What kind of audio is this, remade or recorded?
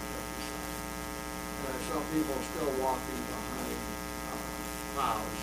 recorded